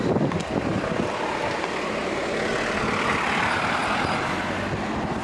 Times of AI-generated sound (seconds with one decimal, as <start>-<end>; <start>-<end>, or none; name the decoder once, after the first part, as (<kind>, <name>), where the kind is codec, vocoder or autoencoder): none